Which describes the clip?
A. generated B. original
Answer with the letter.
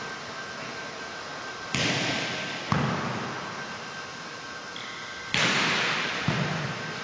B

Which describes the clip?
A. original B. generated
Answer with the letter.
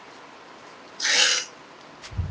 A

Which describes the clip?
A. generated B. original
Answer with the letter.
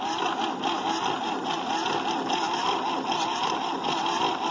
B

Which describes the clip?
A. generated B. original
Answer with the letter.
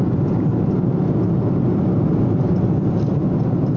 B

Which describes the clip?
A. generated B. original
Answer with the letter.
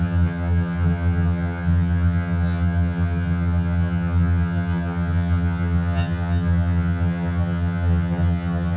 A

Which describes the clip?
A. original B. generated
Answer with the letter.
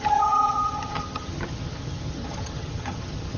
B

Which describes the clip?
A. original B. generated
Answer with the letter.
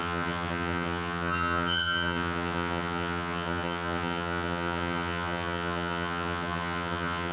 B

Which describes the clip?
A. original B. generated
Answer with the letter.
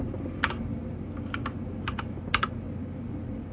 A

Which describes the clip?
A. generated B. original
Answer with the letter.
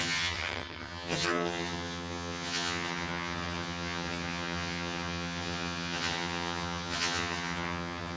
A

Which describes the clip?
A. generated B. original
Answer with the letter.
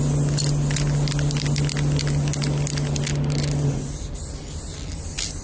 B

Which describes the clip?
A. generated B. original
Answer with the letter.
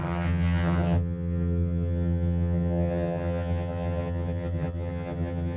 A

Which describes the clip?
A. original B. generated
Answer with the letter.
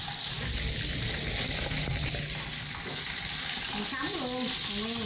A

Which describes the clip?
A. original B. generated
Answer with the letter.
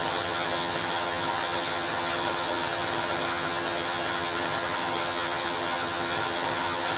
B